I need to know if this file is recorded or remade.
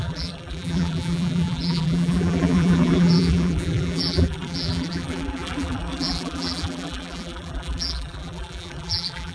remade